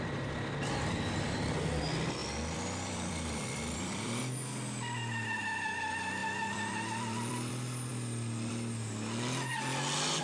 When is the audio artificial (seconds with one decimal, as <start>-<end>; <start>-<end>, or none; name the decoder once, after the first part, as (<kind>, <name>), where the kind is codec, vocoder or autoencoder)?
2.2-4.2 (vocoder, BigVGAN v2); 6.2-7.5